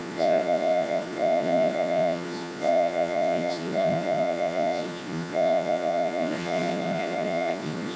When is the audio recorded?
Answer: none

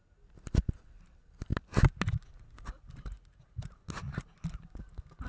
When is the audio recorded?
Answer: 0.0-5.3

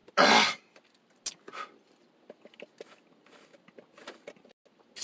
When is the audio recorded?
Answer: 0.8-5.0